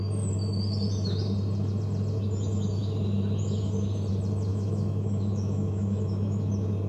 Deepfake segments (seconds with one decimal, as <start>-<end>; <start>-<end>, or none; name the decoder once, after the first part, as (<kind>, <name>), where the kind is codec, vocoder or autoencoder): 4.5-6.5 (autoencoder, DAC-VAE)